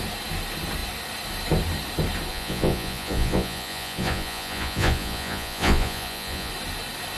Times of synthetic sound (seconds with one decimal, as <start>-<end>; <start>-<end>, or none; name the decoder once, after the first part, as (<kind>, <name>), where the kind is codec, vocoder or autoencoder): 2.3-6.5 (vocoder, Vocos)